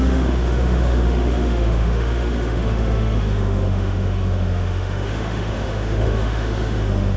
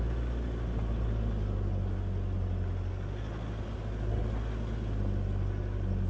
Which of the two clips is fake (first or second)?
first